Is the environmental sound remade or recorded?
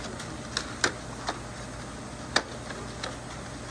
recorded